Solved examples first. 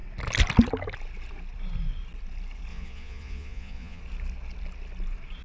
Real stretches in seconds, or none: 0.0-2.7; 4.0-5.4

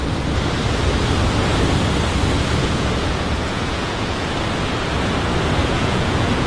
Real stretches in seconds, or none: 0.0-2.6; 4.3-5.6